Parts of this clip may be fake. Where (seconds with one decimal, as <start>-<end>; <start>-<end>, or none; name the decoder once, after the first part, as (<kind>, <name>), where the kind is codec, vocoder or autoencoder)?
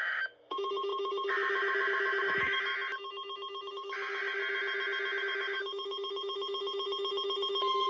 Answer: 0.0-2.7 (autoencoder, DAC-VAE); 3.7-4.4; 5.2-7.9